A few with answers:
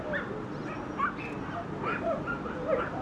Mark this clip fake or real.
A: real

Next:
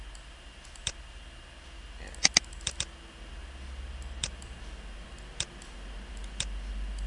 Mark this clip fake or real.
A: real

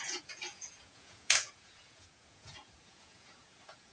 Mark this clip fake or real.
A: fake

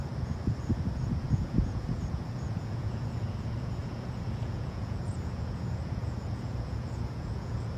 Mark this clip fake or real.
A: fake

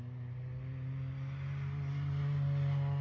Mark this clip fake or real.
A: real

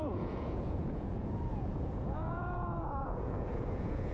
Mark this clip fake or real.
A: fake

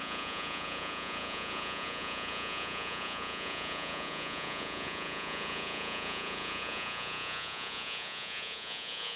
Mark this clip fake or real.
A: fake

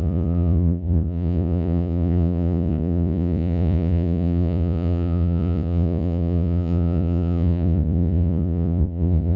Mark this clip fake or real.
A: fake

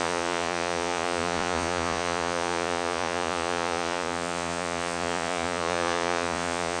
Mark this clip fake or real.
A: fake